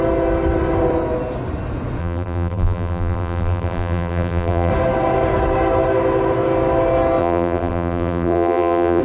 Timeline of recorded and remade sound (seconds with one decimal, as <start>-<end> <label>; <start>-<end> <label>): 0.0-2.0 recorded; 2.0-4.7 remade; 4.7-7.2 recorded; 7.2-9.0 remade